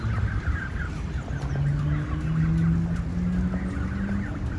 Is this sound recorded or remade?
recorded